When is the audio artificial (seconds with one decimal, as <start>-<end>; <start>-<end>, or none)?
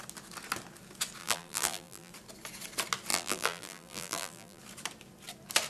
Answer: 1.2-2.1; 3.1-4.6